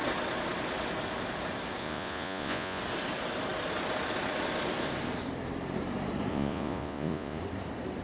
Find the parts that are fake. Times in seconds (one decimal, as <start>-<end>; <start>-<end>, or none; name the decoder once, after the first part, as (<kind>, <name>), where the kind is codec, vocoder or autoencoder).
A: 1.8-2.8 (vocoder, Vocos); 6.3-7.4